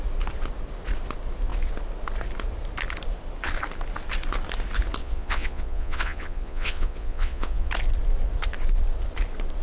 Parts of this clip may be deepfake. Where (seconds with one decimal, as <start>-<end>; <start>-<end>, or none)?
5.0-7.7